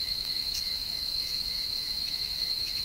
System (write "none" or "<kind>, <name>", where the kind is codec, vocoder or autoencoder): autoencoder, DAC-VAE